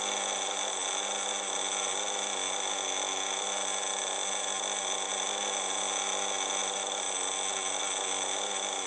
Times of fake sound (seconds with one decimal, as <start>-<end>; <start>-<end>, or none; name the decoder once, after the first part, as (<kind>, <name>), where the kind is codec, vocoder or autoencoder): 6.6-7.8 (vocoder, BigVGAN v2)